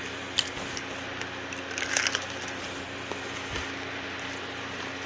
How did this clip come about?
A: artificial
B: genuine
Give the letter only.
B